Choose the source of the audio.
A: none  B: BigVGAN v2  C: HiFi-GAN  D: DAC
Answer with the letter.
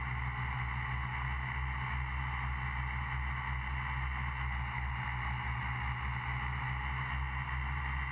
A